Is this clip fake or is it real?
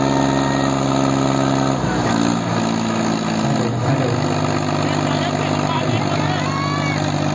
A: real